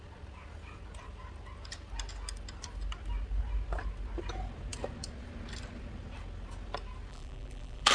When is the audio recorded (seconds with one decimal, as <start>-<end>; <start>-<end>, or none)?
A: 0.0-7.1